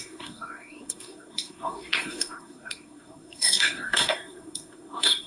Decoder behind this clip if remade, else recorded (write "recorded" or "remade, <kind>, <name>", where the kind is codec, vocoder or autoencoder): remade, codec, SNAC